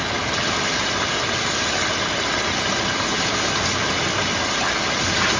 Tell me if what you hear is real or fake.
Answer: real